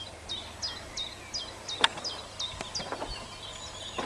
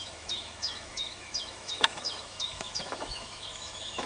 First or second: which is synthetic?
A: second